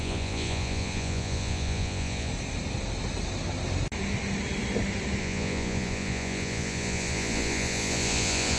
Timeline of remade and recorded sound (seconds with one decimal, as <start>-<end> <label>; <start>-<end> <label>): 0.0-2.3 remade; 2.3-5.2 recorded; 5.2-8.6 remade